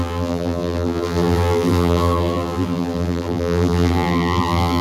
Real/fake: fake